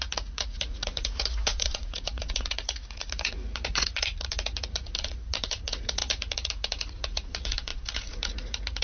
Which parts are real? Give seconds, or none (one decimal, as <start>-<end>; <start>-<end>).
none